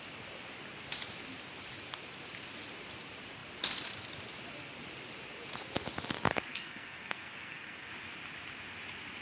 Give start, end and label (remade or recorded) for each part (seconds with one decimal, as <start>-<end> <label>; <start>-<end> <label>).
0.0-6.5 recorded; 6.5-7.9 remade; 7.9-9.2 recorded